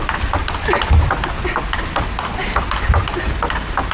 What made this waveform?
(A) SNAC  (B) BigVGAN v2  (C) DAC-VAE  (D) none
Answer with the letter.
D